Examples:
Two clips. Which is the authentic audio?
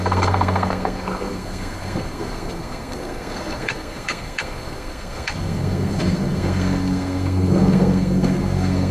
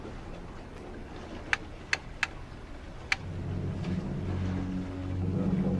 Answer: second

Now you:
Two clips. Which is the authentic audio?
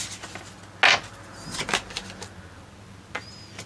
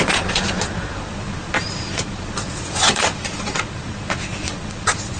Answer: first